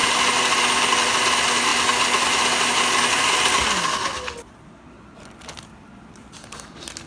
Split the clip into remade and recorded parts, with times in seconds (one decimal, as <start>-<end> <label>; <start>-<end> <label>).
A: 0.0-7.1 recorded